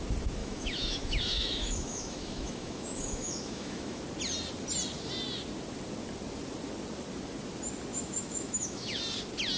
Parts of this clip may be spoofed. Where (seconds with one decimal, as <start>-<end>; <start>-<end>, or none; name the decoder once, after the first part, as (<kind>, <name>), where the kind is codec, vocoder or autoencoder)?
0.4-4.0 (autoencoder, DAC-VAE); 7.9-9.0